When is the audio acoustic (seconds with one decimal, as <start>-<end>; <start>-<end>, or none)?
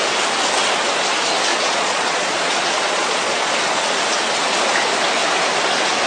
0.0-1.5; 3.5-6.1